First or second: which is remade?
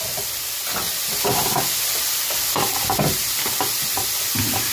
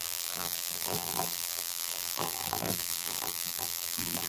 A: second